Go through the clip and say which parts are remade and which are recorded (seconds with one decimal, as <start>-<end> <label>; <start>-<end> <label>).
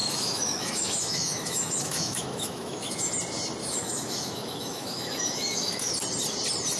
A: 0.0-3.1 remade; 3.1-3.6 recorded; 3.6-5.9 remade; 5.9-6.8 recorded